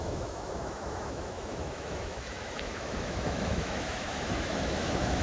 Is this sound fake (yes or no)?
yes